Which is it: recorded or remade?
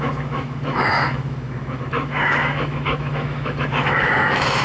remade